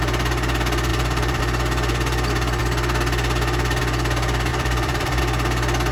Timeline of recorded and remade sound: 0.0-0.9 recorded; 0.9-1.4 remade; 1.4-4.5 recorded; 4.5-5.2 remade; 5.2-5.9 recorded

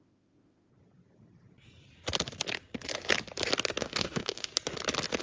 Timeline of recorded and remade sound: 0.0-0.7 remade; 0.7-3.8 recorded; 3.8-4.5 remade; 4.5-5.2 recorded

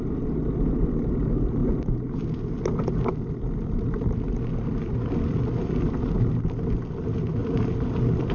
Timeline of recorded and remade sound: 0.0-7.4 recorded; 7.4-8.3 remade